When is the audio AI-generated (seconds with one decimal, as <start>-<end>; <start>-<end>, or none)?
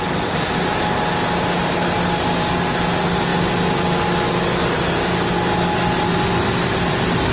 none